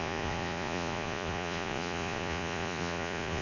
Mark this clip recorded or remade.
remade